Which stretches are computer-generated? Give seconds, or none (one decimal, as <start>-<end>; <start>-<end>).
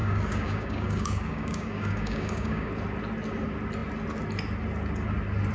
0.0-2.7